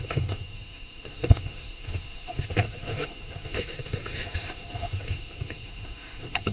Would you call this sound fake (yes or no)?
yes